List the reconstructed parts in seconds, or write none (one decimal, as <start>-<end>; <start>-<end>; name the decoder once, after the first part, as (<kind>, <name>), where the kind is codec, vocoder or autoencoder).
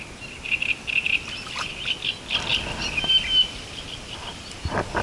none